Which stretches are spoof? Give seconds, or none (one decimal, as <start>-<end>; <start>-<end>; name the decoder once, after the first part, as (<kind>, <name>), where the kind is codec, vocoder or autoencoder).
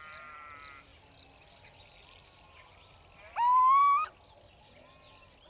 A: none